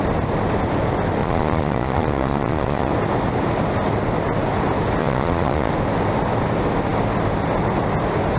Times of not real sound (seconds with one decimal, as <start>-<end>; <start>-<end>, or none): 1.2-2.9; 5.0-5.7